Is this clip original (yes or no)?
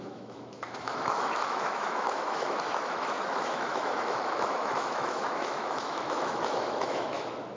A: no